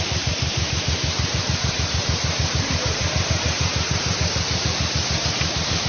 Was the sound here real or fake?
fake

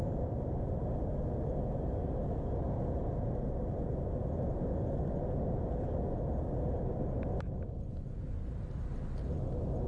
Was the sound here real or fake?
real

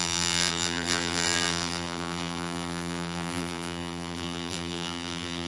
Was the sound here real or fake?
fake